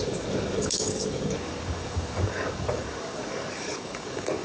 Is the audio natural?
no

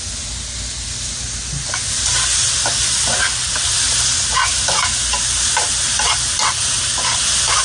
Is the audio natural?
yes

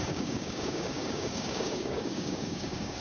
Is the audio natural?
no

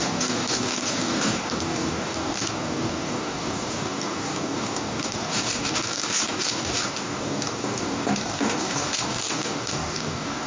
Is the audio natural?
no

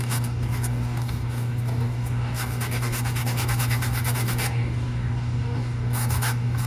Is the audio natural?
no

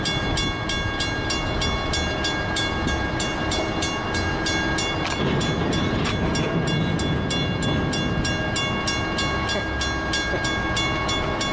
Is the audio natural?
yes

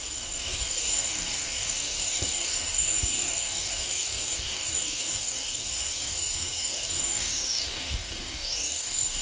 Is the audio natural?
no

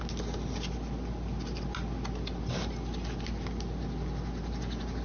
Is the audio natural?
yes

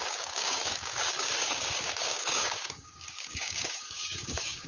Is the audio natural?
no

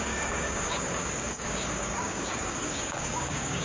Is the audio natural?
no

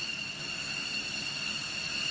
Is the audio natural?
yes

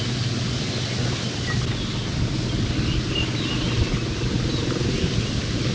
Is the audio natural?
yes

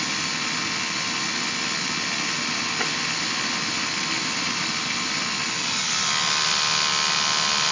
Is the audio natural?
yes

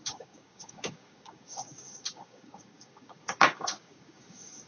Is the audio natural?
no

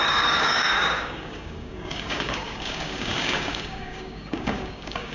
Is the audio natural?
no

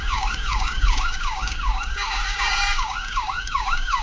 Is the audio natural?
no